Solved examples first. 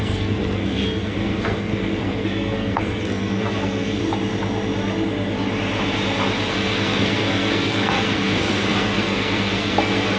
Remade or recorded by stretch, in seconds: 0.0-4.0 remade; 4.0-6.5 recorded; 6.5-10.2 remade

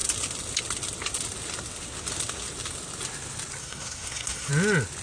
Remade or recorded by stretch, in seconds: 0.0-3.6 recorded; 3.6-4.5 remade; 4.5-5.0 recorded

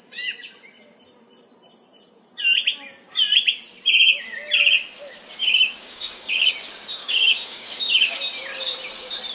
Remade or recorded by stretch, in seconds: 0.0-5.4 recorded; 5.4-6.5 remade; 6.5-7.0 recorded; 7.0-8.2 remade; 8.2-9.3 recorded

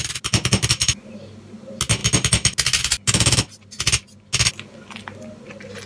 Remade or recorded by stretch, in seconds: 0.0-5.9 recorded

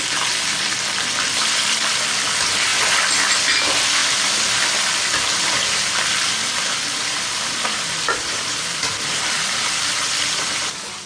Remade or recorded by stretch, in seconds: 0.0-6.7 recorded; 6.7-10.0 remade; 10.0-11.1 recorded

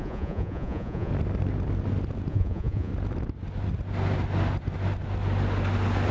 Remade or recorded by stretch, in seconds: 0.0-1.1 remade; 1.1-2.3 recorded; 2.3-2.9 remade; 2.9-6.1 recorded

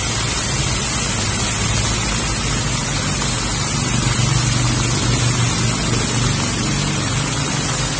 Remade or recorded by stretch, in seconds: 0.0-8.0 recorded